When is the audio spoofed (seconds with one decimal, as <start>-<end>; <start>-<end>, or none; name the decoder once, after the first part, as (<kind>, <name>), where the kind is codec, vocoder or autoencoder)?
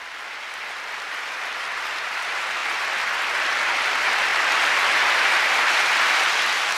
none